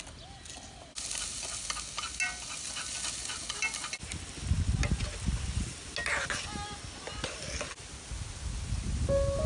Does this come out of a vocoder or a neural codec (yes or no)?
no